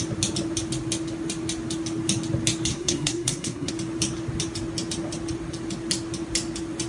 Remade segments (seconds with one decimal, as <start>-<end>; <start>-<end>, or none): 2.7-3.7